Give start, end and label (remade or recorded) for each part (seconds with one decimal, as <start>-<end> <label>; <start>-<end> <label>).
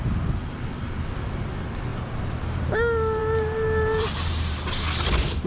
0.0-1.9 recorded; 1.9-2.7 remade; 2.7-3.2 recorded; 3.2-4.6 remade; 4.6-5.5 recorded